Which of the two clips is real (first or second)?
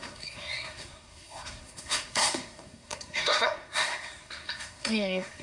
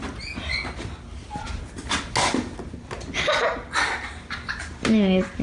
second